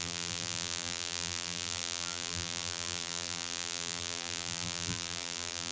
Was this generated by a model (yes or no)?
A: yes